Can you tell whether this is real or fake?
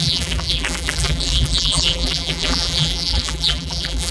fake